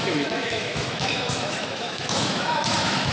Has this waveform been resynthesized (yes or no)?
yes